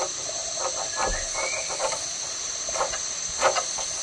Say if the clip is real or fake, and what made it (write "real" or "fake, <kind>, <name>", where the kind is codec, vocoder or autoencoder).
real